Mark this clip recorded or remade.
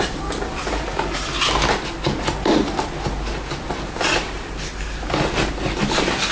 recorded